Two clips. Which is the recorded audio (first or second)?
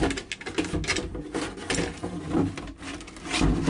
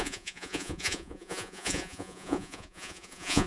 first